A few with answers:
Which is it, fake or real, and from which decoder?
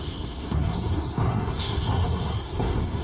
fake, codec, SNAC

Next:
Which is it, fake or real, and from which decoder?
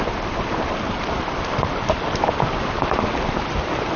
real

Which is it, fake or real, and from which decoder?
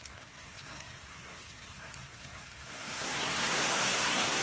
fake, codec, SNAC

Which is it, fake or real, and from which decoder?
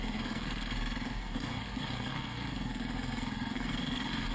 fake, codec, SNAC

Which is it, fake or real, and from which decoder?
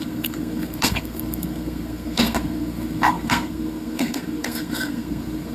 fake, codec, SNAC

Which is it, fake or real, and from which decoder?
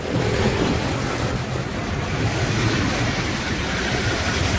real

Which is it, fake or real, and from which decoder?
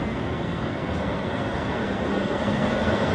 fake, codec, SNAC